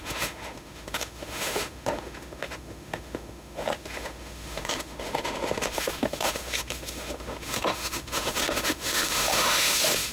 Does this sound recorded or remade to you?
remade